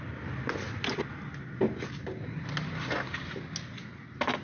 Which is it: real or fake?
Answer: real